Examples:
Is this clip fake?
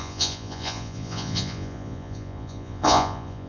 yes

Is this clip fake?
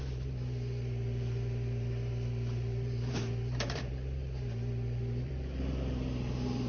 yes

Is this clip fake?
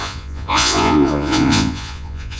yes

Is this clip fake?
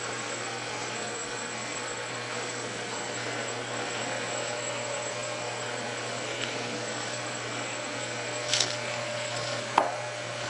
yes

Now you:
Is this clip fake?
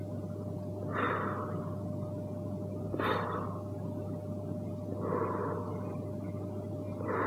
no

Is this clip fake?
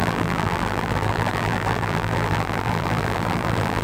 yes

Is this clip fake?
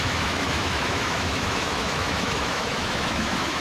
yes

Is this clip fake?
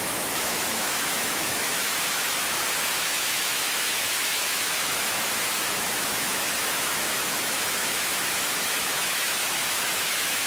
yes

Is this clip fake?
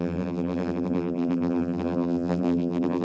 yes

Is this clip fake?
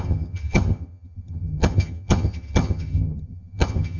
yes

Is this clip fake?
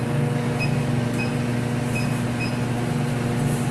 no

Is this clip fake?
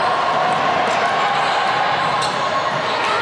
no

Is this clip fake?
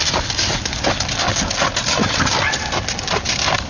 no